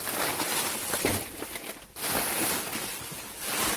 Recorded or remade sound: recorded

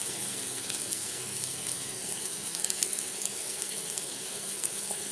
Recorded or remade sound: remade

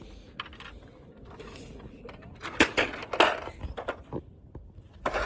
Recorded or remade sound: recorded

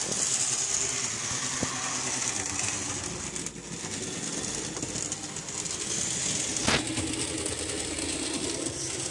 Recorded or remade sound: recorded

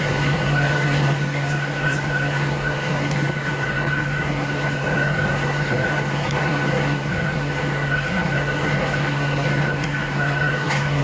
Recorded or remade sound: remade